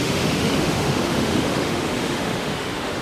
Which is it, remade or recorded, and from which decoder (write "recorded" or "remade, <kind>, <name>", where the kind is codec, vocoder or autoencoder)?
remade, autoencoder, DAC-VAE